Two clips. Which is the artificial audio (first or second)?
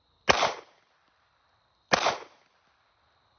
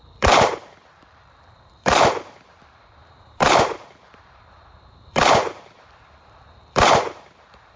second